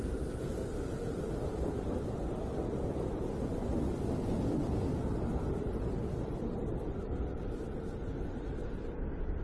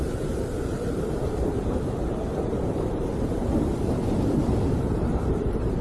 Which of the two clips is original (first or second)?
first